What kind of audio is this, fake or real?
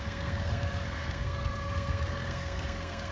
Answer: fake